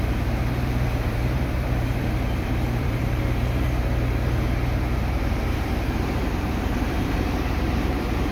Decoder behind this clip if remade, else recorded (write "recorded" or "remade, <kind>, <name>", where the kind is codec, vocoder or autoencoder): remade, vocoder, BigVGAN v2